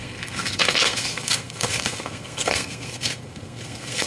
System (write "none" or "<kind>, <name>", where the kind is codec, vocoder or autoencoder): codec, SNAC